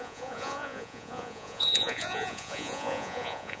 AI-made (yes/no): yes